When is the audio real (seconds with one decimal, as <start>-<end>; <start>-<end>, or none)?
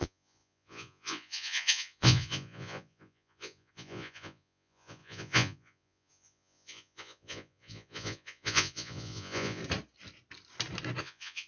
9.6-11.0